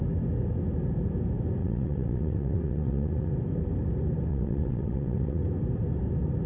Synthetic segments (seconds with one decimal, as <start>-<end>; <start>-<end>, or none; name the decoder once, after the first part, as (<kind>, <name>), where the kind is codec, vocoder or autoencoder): 1.6-3.3 (vocoder, WaveNeXt); 4.3-5.4